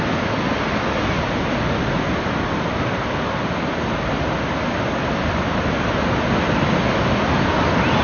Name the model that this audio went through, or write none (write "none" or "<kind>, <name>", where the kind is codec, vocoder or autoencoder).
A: none